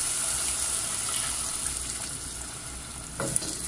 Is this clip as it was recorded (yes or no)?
yes